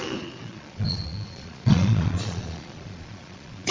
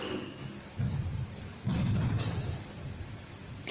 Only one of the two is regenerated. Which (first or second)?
first